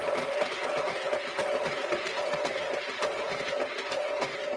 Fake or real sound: real